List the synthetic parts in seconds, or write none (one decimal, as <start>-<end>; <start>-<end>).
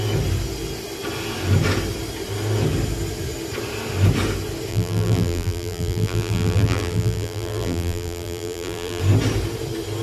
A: 4.7-9.0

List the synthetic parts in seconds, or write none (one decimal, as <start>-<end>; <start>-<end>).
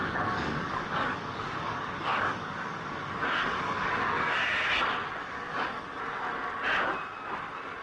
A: 0.0-4.7; 5.2-6.0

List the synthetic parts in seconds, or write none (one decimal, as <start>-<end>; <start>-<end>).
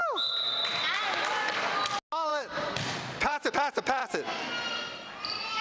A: 2.3-3.5